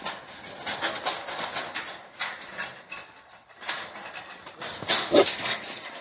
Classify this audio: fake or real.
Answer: real